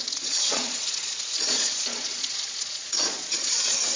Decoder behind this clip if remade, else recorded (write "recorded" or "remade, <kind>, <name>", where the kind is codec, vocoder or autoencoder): remade, vocoder, Vocos